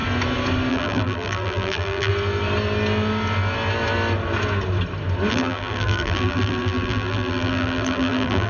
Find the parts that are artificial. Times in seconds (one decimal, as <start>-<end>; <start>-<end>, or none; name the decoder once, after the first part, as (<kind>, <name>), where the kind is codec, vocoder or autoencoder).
0.7-2.1 (vocoder, BigVGAN v2); 5.3-8.5